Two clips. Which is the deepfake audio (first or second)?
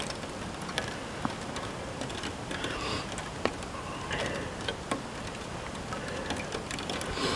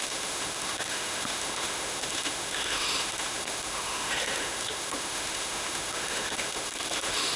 second